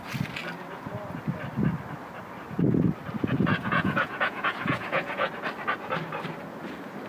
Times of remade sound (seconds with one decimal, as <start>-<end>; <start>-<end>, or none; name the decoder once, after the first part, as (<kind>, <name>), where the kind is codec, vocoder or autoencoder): 3.5-5.3 (vocoder, Vocos)